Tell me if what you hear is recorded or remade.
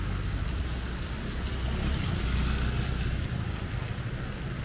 recorded